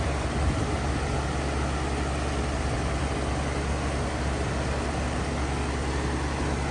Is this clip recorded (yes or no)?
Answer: yes